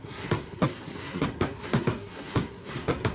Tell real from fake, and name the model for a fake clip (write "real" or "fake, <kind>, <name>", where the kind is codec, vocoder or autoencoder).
fake, codec, SNAC